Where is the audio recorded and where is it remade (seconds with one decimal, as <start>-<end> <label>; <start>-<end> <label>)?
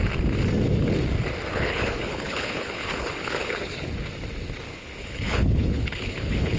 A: 0.0-1.5 recorded; 1.5-3.9 remade; 3.9-4.7 recorded; 4.7-6.6 remade